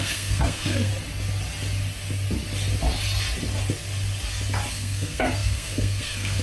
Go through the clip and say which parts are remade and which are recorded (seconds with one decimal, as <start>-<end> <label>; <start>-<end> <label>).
0.0-0.9 remade; 0.9-4.7 recorded; 4.7-6.4 remade